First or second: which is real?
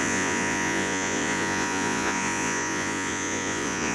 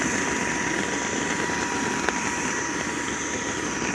second